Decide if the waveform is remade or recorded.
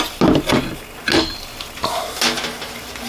recorded